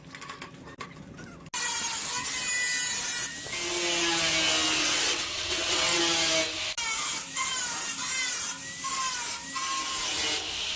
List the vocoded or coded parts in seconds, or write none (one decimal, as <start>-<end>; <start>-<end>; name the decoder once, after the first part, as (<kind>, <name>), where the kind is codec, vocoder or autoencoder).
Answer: 4.8-6.0 (vocoder, WaveNeXt)